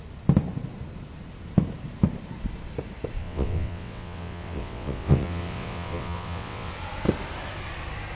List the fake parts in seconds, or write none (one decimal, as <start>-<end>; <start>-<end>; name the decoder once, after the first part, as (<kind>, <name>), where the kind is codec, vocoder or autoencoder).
3.2-6.7 (vocoder, WaveNeXt)